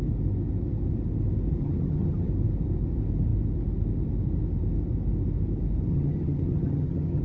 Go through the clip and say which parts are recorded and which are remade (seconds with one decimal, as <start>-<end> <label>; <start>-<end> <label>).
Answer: 0.0-1.6 recorded; 1.6-2.3 remade; 2.3-5.9 recorded; 5.9-7.2 remade